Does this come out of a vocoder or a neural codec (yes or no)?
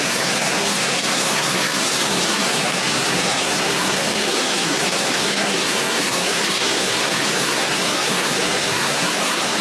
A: yes